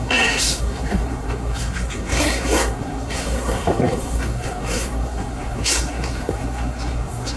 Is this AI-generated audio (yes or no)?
yes